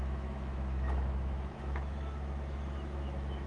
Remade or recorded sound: remade